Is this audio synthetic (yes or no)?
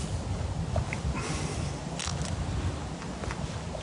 no